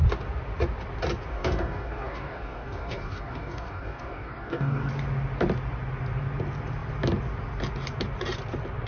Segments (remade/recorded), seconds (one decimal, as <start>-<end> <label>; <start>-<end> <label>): 0.0-1.3 recorded; 1.3-4.9 remade; 4.9-8.9 recorded